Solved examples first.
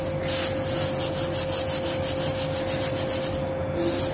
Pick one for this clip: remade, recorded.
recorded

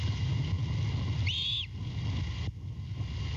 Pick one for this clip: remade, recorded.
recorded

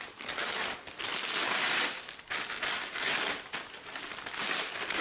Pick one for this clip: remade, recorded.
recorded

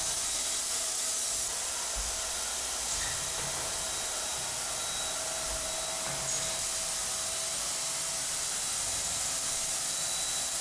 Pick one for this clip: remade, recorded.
recorded